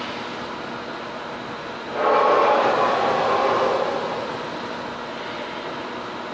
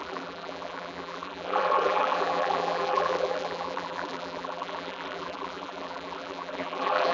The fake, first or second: second